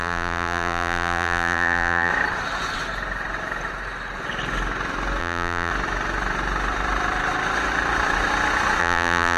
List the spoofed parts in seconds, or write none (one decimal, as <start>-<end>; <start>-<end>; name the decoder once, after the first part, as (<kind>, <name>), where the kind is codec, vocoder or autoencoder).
0.0-2.1 (vocoder, BigVGAN v2); 5.2-5.7; 8.8-9.4